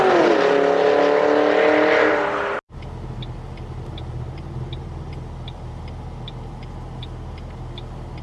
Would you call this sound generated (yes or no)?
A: no